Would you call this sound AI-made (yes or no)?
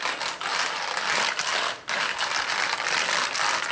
no